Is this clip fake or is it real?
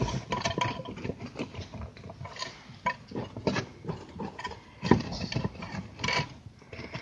real